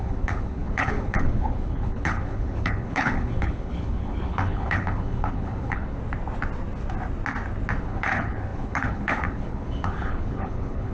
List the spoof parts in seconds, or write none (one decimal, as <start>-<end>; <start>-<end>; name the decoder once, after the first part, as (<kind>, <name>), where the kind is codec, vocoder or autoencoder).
0.0-6.0 (codec, HILCodec); 7.8-10.9